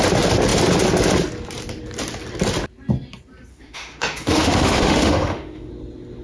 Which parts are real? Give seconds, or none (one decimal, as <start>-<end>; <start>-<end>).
0.0-3.5; 5.7-6.2